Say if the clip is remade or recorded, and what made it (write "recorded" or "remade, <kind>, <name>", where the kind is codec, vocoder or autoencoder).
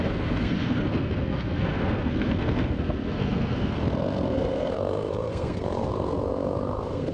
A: remade, codec, SNAC